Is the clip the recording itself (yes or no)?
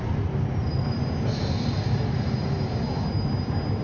yes